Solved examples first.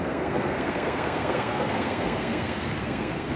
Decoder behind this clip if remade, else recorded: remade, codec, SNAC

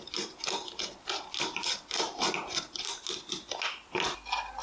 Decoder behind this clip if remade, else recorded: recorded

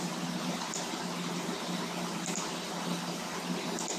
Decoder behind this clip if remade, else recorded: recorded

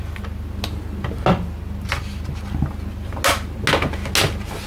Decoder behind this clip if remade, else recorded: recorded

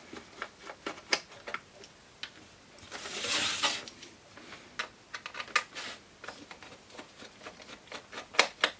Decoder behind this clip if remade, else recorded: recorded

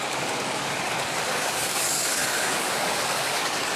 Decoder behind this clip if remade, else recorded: remade, codec, DAC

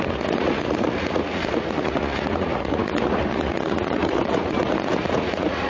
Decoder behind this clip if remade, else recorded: remade, vocoder, Vocos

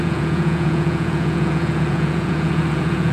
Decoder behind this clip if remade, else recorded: remade, vocoder, Vocos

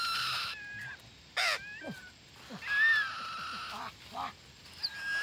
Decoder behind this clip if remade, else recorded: recorded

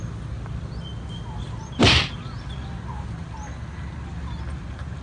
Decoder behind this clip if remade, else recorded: recorded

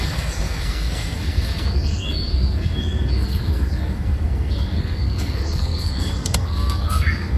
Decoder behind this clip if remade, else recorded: remade, codec, SNAC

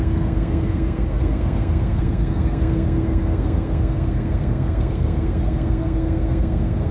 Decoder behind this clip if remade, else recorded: remade, codec, SNAC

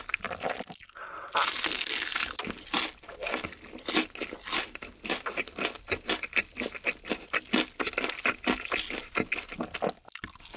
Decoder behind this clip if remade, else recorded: recorded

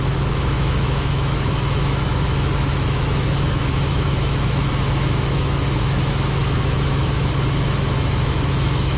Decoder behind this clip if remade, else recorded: remade, autoencoder, DAC-VAE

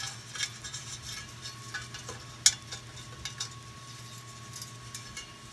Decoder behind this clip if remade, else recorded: recorded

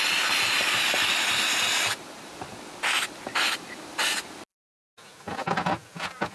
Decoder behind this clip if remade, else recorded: recorded